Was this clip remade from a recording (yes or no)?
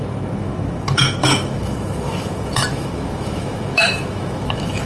yes